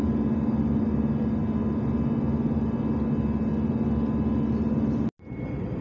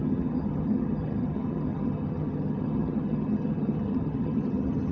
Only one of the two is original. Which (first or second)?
first